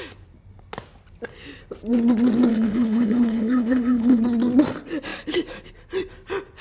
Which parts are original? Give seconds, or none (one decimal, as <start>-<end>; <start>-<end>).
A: 0.0-2.5; 4.2-6.6